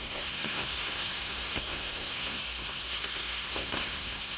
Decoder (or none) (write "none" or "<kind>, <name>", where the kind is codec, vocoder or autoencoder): codec, SNAC